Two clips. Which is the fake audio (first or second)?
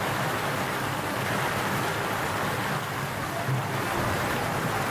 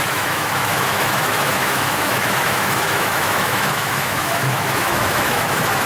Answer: second